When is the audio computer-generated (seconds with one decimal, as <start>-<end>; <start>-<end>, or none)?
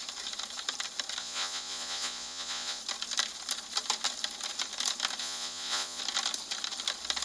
1.2-2.8; 5.2-6.0